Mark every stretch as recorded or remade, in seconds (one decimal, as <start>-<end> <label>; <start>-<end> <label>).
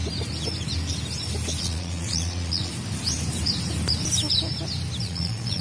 0.0-1.6 recorded; 1.6-2.7 remade; 2.7-5.0 recorded; 5.0-5.6 remade